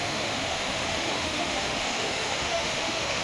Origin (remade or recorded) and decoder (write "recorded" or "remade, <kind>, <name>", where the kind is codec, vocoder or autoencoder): remade, autoencoder, DAC-VAE